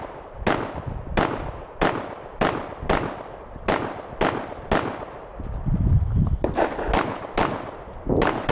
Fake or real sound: real